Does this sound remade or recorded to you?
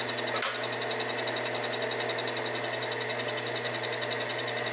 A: recorded